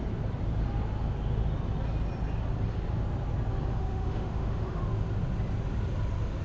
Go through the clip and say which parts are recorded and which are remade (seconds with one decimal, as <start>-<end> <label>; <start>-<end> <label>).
0.0-3.7 recorded; 3.7-4.8 remade; 4.8-6.4 recorded